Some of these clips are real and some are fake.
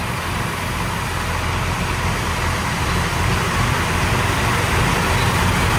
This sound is fake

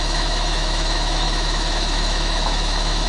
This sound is fake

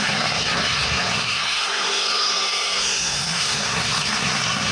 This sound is fake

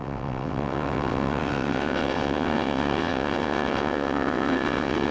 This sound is fake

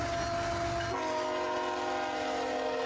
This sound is real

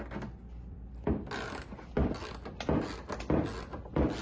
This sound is real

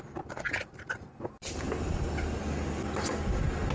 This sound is real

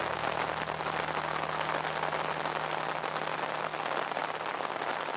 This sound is real